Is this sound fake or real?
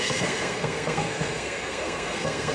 fake